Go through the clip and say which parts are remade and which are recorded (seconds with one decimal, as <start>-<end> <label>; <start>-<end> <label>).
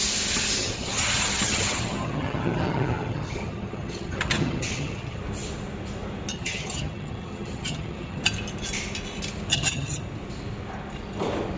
0.0-0.6 recorded; 0.6-5.2 remade; 5.2-6.3 recorded; 6.3-8.2 remade; 8.2-9.5 recorded; 9.5-10.0 remade; 10.0-11.6 recorded